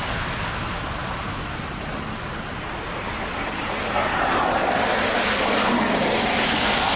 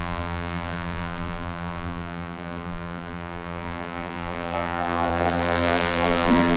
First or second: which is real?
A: first